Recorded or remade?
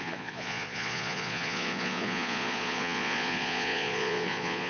remade